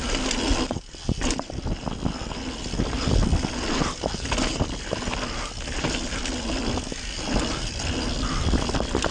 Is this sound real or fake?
real